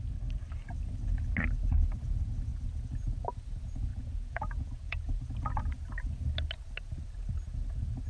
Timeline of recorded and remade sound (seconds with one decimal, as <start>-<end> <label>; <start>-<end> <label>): 0.0-3.9 recorded; 3.9-5.2 remade; 5.2-8.1 recorded

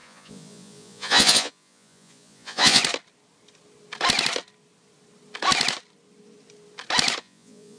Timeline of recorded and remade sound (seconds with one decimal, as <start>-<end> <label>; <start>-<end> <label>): 0.0-2.8 remade; 2.8-7.2 recorded; 7.2-7.8 remade

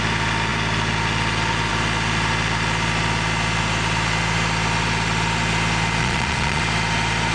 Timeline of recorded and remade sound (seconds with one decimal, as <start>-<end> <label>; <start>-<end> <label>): 0.0-6.0 recorded; 6.0-6.6 remade; 6.6-7.3 recorded